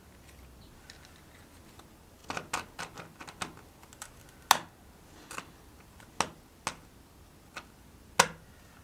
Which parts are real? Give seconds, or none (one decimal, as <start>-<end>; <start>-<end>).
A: 0.0-8.8